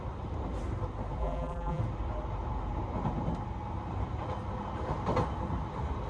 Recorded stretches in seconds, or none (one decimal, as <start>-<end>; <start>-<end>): 0.0-1.2; 1.8-6.1